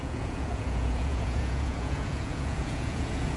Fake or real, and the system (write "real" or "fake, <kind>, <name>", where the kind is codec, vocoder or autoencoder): fake, vocoder, Vocos